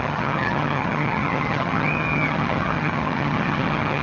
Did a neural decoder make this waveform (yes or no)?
yes